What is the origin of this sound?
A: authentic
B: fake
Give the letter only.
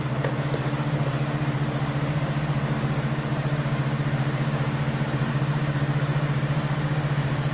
B